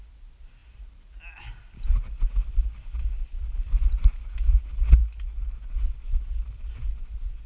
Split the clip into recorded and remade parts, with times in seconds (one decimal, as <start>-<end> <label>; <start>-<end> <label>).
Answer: 0.0-7.5 recorded